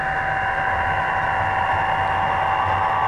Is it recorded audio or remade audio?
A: recorded